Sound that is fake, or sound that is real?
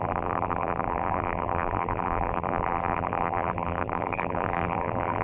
fake